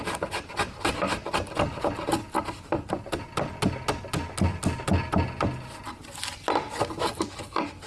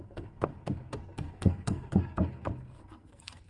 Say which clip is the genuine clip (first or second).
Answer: first